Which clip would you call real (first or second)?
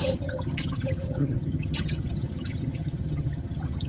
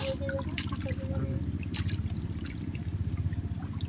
second